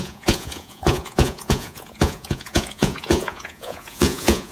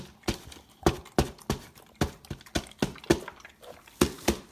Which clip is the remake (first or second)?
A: first